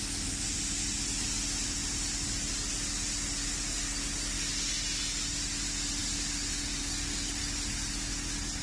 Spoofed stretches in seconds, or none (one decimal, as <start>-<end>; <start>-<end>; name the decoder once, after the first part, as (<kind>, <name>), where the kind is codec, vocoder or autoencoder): none